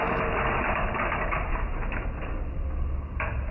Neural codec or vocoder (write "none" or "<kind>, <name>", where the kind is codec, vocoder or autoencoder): none